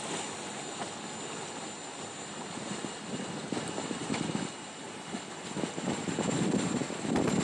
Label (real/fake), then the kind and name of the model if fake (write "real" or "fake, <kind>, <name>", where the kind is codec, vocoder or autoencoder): real